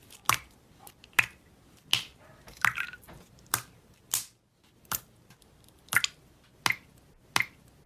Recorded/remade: recorded